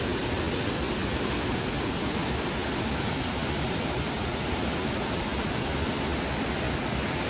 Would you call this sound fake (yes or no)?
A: no